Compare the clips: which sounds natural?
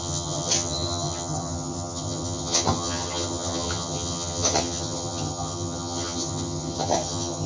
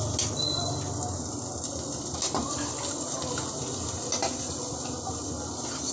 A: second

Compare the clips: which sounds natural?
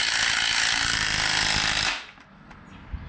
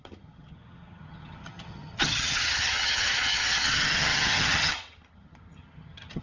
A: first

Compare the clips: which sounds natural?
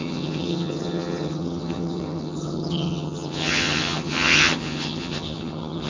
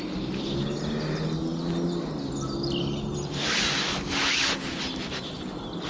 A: second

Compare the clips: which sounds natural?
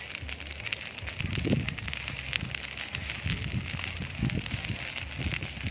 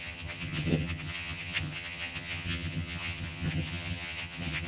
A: first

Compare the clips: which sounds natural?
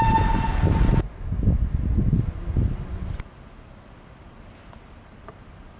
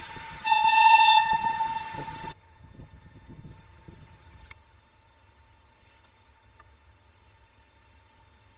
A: first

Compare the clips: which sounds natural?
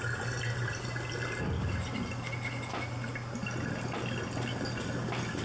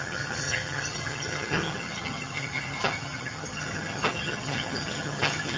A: first